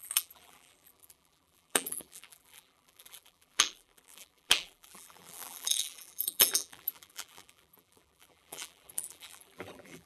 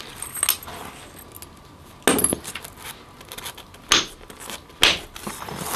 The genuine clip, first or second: second